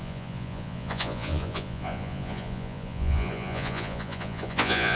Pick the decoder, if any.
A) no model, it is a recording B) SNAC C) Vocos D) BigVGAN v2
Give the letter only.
C